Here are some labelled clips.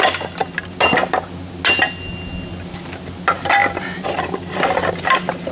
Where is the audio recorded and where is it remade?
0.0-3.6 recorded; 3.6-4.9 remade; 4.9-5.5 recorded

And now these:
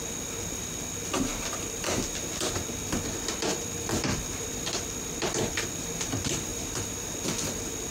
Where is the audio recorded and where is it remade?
0.0-1.3 recorded; 1.3-2.3 remade; 2.3-3.5 recorded; 3.5-5.5 remade; 5.5-6.5 recorded; 6.5-7.1 remade; 7.1-7.9 recorded

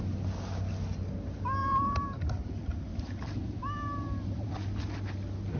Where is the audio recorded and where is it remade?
0.0-1.6 recorded; 1.6-5.0 remade; 5.0-5.6 recorded

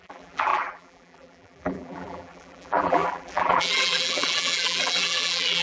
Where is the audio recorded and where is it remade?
0.0-5.6 remade

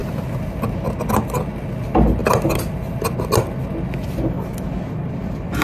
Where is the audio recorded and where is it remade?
0.0-5.6 recorded

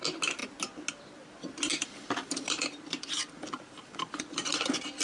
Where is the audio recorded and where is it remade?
0.0-1.7 recorded; 1.7-5.0 remade